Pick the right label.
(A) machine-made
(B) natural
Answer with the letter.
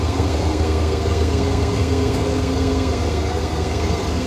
A